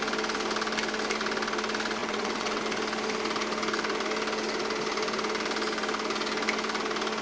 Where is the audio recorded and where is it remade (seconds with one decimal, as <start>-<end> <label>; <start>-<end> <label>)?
0.0-2.0 recorded; 2.0-2.6 remade; 2.6-7.2 recorded